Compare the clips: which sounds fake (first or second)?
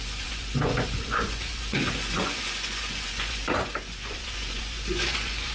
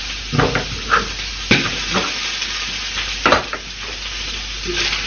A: first